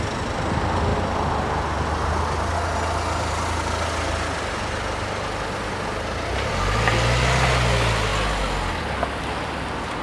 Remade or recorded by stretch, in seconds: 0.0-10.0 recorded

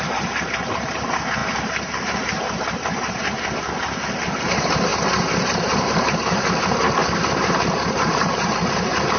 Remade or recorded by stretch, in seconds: 0.0-3.2 remade; 3.2-3.8 recorded; 3.8-7.0 remade; 7.0-7.9 recorded; 7.9-9.2 remade

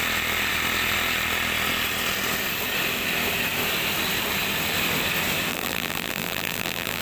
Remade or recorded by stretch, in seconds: 0.0-5.5 recorded; 5.5-7.0 remade

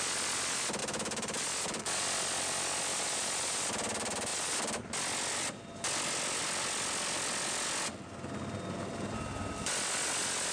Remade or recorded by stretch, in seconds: 0.0-10.5 recorded

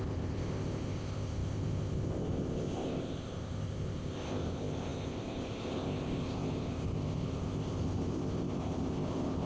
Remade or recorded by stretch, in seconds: 0.0-9.5 remade

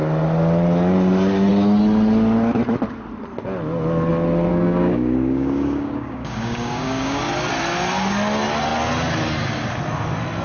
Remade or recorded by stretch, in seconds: 0.0-4.5 recorded; 4.5-7.2 remade; 7.2-10.4 recorded

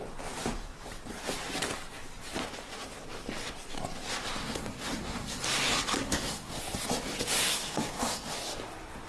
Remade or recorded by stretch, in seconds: 0.0-4.4 recorded; 4.4-5.4 remade; 5.4-6.0 recorded; 6.0-6.6 remade; 6.6-7.4 recorded; 7.4-8.3 remade; 8.3-9.1 recorded

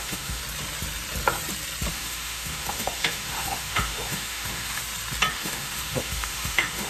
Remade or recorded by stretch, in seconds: 0.0-0.4 remade; 0.4-1.9 recorded; 1.9-4.8 remade; 4.8-5.3 recorded; 5.3-6.9 remade